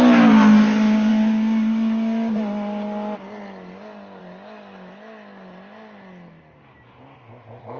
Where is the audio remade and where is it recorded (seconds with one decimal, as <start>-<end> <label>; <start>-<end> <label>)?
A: 0.0-7.8 recorded